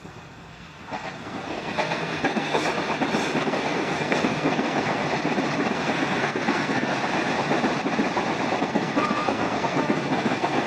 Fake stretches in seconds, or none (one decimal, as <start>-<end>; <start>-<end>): 0.0-2.6; 3.4-5.0; 5.7-6.9; 8.6-10.7